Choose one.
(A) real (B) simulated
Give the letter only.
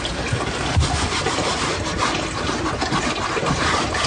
A